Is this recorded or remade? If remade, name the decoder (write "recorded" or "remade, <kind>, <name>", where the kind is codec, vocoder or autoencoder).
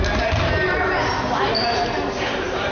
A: recorded